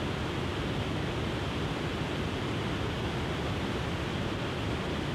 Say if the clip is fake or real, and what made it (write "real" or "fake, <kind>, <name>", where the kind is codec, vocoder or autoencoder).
real